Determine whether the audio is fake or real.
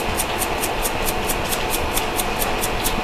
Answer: real